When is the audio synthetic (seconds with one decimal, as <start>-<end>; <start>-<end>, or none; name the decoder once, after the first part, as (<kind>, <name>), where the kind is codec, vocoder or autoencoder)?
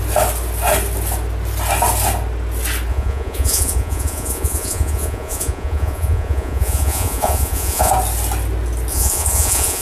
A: 2.9-7.9 (vocoder, Vocos); 8.9-9.8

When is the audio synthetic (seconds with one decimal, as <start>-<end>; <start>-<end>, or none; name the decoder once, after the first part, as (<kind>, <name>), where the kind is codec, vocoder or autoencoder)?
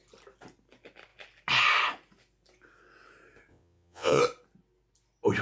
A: 3.5-4.2 (vocoder, WaveNeXt)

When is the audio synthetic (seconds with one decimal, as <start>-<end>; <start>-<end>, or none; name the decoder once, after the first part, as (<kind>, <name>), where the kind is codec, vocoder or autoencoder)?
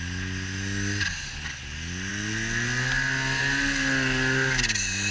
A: none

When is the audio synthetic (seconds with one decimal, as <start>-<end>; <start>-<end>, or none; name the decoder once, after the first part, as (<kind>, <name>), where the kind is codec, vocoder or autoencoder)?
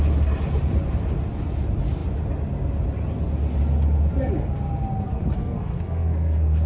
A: 5.4-6.7 (codec, SNAC)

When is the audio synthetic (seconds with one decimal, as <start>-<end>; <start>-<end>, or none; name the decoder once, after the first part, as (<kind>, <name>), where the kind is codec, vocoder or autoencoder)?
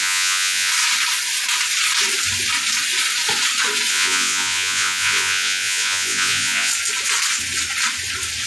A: 0.0-0.7 (vocoder, Vocos); 3.9-6.7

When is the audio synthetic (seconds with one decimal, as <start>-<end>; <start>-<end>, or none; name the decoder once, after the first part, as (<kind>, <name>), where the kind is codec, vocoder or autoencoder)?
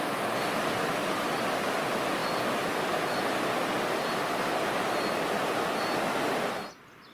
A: 1.0-1.8 (vocoder, BigVGAN v2)